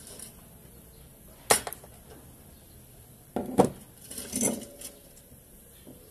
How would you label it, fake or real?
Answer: real